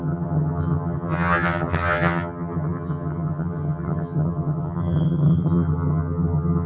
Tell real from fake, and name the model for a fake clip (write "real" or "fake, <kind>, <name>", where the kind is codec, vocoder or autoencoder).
fake, vocoder, HiFi-GAN